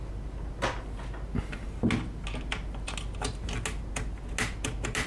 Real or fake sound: real